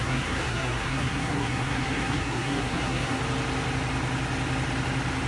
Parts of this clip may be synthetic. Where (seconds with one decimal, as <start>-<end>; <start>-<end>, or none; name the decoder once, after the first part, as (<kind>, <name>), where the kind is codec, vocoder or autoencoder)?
0.0-3.2 (codec, SNAC)